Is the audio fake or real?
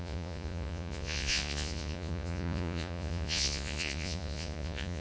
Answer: fake